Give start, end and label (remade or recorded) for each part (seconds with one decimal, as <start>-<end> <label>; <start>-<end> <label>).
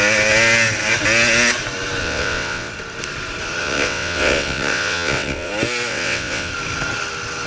0.0-2.0 recorded; 2.0-2.7 remade; 2.7-3.6 recorded; 3.6-5.5 remade; 5.5-5.9 recorded; 5.9-6.5 remade; 6.5-7.5 recorded